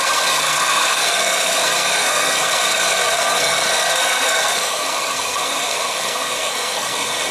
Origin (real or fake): fake